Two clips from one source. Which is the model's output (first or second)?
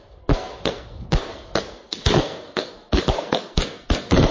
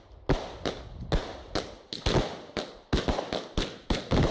first